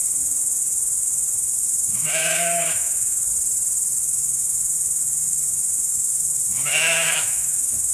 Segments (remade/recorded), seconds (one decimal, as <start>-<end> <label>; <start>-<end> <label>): 0.0-3.3 remade; 3.3-4.0 recorded; 4.0-7.9 remade